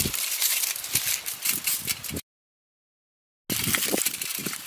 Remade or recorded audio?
recorded